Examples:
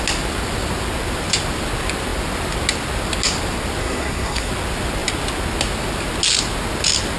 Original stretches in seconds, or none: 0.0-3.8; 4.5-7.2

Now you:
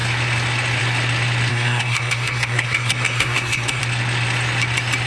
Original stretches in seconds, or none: 0.0-1.5; 3.8-5.1

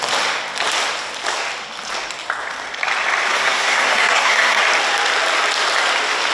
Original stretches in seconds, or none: 0.0-3.3; 4.6-6.3